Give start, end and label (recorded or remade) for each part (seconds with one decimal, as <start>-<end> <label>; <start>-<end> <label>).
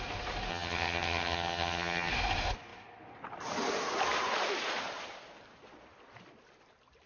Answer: 0.0-0.5 recorded; 0.5-2.1 remade; 2.1-7.1 recorded